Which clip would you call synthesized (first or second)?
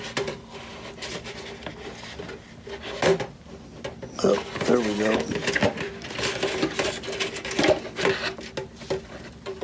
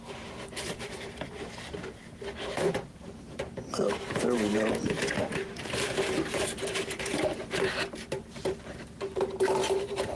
second